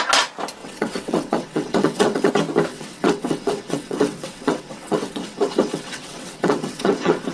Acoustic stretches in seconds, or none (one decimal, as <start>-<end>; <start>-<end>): 0.0-0.6; 2.3-2.7